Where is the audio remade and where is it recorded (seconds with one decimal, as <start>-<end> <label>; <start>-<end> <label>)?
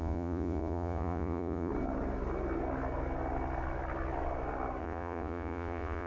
0.0-1.7 remade; 1.7-4.8 recorded; 4.8-6.1 remade